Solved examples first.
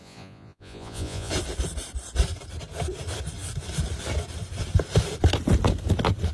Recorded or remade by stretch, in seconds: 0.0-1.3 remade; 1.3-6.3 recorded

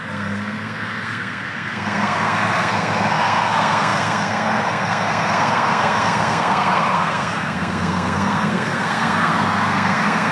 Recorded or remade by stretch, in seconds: 0.0-10.3 remade

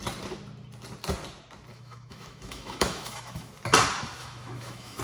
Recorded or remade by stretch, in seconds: 0.0-1.7 recorded; 1.7-3.5 remade; 3.5-4.2 recorded; 4.2-5.0 remade